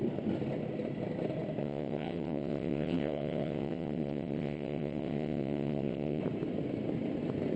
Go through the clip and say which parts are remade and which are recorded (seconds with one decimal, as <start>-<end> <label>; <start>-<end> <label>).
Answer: 0.0-1.6 recorded; 1.6-6.2 remade; 6.2-7.6 recorded